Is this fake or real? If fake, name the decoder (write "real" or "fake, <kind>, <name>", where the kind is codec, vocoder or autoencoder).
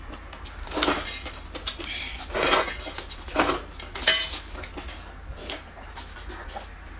real